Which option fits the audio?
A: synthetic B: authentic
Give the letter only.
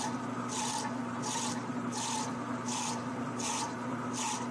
B